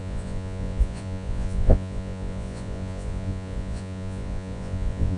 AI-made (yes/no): yes